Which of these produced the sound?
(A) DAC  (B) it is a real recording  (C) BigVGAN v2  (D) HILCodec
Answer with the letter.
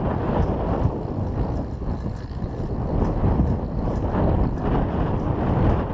B